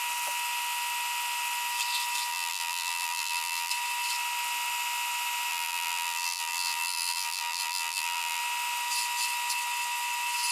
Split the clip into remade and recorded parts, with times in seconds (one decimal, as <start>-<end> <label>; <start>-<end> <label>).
0.0-2.3 recorded; 2.3-3.7 remade; 3.7-5.5 recorded; 5.5-8.4 remade; 8.4-10.5 recorded